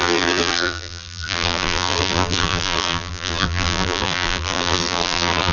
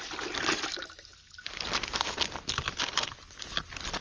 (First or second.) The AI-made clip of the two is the first